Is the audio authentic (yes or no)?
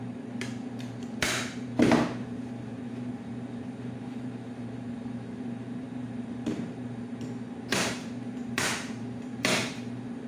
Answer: no